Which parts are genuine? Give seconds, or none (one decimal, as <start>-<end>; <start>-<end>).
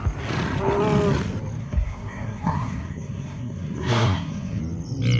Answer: 0.0-1.6; 4.6-5.2